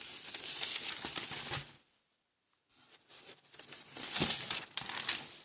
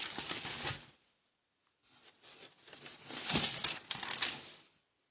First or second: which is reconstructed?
first